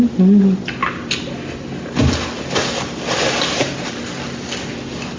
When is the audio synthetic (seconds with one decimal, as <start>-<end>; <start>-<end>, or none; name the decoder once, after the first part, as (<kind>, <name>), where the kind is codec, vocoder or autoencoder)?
none